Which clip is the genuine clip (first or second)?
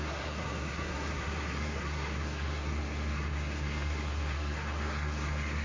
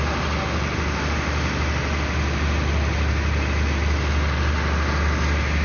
second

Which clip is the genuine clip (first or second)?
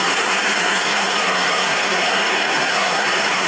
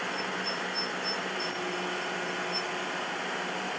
second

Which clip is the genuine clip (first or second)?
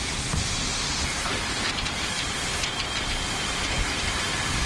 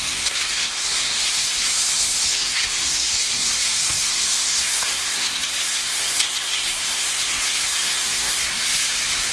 first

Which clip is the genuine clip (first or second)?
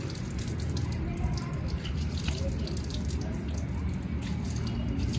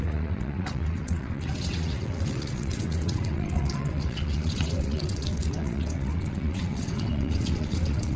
first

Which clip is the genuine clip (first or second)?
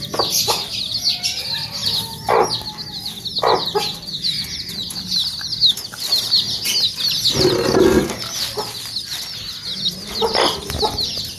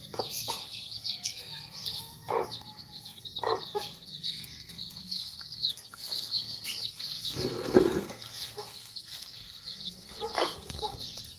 first